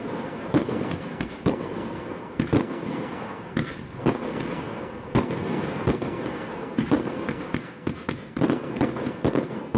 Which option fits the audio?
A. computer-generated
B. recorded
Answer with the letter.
A